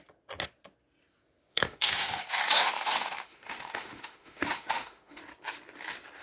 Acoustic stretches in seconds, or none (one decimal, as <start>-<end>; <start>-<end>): 0.0-1.5; 5.2-6.2